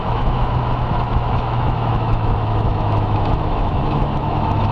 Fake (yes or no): yes